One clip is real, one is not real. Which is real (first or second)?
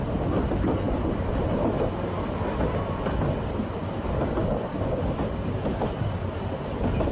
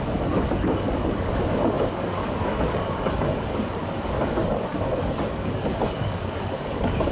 first